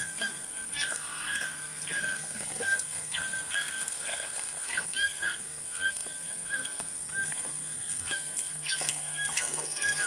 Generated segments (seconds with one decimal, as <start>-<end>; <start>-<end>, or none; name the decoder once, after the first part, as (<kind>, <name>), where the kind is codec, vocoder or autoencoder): 0.0-10.1 (codec, SNAC)